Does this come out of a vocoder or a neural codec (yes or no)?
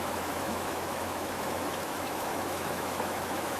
yes